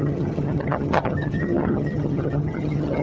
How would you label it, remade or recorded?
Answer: remade